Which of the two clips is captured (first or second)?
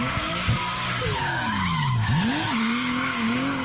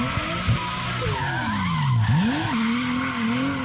second